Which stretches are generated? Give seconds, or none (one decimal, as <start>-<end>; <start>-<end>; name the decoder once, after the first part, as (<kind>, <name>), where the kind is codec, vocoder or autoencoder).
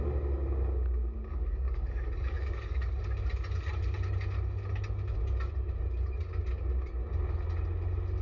1.3-2.9 (codec, DAC)